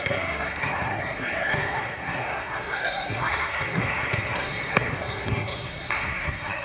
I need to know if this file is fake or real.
fake